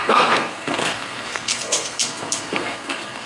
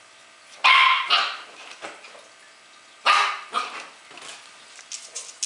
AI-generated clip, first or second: first